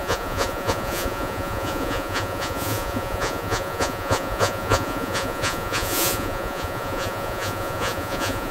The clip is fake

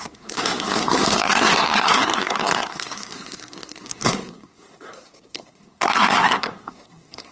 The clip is fake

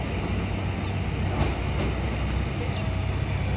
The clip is real